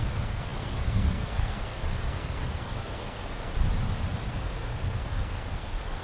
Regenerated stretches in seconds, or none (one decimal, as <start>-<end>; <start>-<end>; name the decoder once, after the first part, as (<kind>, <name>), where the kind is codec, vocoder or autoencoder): 0.0-3.5 (codec, SNAC); 4.3-6.0